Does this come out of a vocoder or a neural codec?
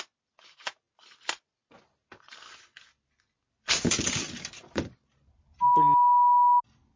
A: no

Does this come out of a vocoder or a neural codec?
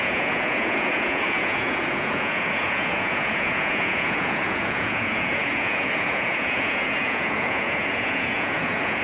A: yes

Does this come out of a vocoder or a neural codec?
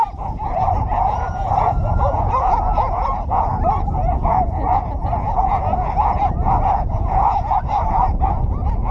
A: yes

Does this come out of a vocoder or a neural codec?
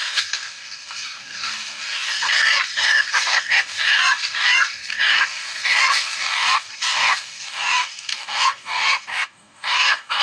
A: yes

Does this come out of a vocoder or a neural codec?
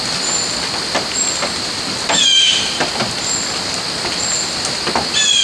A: no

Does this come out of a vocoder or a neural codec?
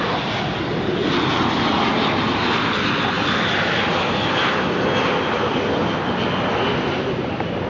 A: no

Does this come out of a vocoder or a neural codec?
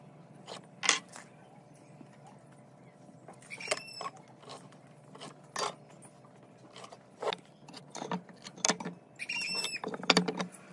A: no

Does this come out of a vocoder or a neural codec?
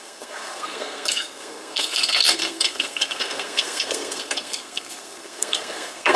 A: yes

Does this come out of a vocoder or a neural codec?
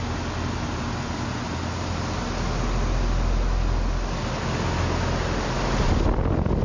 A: no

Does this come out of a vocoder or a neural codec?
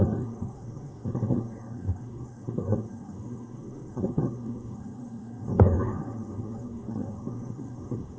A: yes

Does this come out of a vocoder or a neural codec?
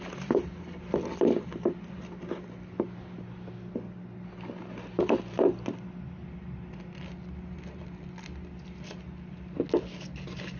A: no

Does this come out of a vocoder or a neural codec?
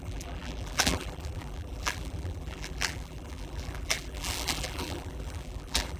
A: yes